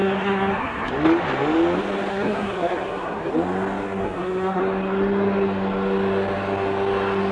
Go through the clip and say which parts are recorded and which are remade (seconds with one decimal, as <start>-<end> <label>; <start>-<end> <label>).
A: 0.0-0.9 remade; 0.9-2.1 recorded; 2.1-3.3 remade; 3.3-4.0 recorded; 4.0-4.6 remade; 4.6-7.3 recorded